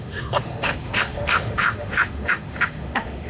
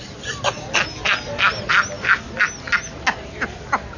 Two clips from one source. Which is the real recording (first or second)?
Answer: second